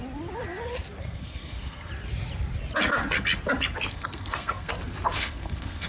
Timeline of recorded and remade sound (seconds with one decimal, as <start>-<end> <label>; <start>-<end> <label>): 0.0-1.0 recorded; 1.0-1.9 remade; 1.9-3.9 recorded; 3.9-4.7 remade; 4.7-5.2 recorded; 5.2-5.9 remade